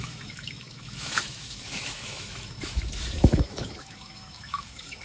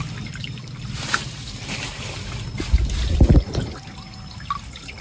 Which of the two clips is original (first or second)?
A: second